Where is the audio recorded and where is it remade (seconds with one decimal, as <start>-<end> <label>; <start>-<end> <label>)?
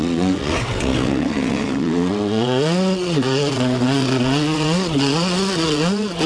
0.0-6.3 remade